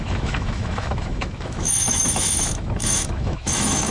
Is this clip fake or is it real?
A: fake